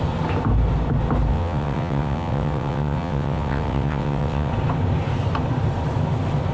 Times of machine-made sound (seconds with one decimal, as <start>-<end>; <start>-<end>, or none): 1.3-4.5